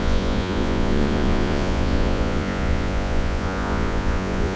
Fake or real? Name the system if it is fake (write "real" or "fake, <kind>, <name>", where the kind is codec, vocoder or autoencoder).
fake, vocoder, Vocos